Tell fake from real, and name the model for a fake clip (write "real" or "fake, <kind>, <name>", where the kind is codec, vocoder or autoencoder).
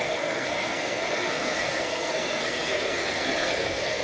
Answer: fake, codec, SNAC